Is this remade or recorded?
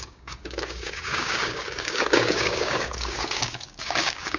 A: remade